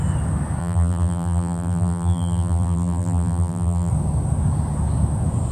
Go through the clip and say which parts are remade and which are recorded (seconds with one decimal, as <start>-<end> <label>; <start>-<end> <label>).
0.0-0.6 recorded; 0.6-3.9 remade; 3.9-5.5 recorded